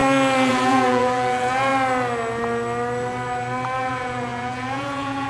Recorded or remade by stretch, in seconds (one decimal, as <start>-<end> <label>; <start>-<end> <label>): 0.0-0.5 recorded; 0.5-1.7 remade; 1.7-3.8 recorded; 3.8-5.3 remade